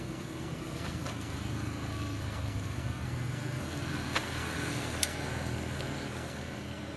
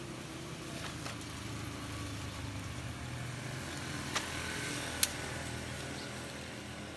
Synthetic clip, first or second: first